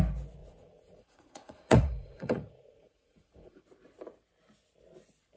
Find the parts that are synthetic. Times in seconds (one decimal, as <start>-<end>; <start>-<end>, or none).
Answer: 0.4-3.6